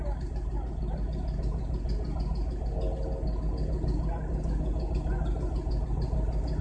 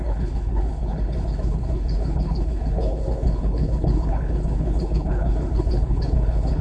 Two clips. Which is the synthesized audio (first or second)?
second